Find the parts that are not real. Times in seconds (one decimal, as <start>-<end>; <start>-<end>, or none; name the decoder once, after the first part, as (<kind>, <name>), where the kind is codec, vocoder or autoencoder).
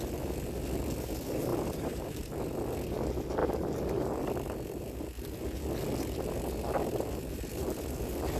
1.5-2.3 (vocoder, BigVGAN v2)